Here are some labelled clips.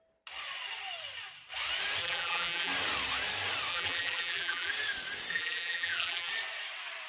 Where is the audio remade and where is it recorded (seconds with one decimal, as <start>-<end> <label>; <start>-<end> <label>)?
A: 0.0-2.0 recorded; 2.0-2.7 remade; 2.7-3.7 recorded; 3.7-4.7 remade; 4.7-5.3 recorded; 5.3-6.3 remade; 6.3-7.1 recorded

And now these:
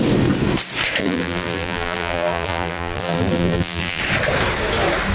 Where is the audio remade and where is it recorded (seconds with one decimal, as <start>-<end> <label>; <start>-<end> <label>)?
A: 0.0-1.0 recorded; 1.0-4.0 remade; 4.0-5.1 recorded

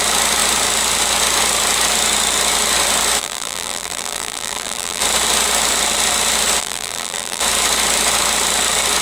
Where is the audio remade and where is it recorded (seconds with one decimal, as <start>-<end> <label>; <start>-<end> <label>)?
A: 0.0-3.2 recorded; 3.2-5.0 remade; 5.0-6.6 recorded; 6.6-7.4 remade; 7.4-9.0 recorded